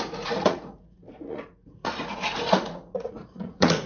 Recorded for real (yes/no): no